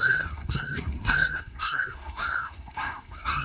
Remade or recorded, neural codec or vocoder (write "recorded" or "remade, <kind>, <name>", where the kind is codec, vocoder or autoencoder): remade, codec, SNAC